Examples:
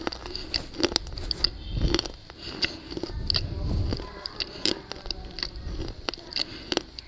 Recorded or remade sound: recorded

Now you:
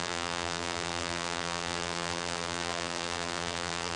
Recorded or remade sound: remade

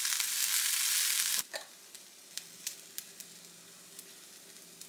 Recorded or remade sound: recorded